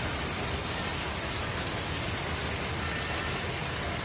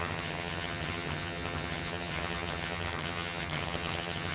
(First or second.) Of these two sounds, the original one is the first